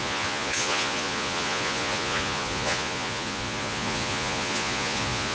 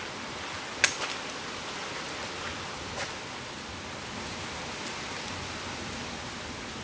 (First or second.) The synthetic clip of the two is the first